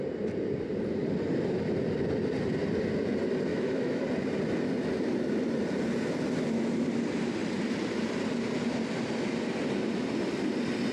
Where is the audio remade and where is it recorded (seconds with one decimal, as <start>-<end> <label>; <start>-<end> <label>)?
0.0-3.5 recorded; 3.5-4.0 remade; 4.0-10.9 recorded